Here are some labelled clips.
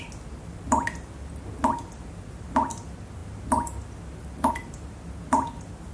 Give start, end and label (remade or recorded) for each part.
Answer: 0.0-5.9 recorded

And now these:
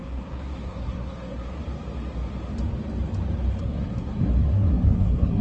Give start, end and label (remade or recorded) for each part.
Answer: 0.0-1.6 remade; 1.6-3.6 recorded; 3.6-5.4 remade

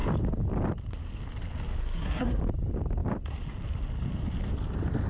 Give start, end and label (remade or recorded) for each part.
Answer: 0.0-1.8 recorded; 1.8-2.4 remade; 2.4-5.1 recorded

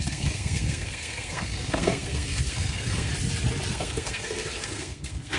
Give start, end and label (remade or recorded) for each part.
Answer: 0.0-3.1 remade; 3.1-3.7 recorded; 3.7-5.4 remade